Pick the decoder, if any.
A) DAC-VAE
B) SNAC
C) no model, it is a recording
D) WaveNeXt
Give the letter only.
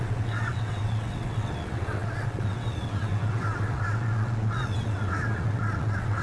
D